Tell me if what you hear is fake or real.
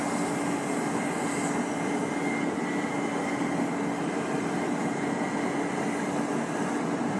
real